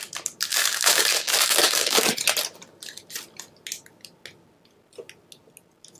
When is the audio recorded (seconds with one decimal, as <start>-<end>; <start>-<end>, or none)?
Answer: 0.0-0.5; 2.1-6.0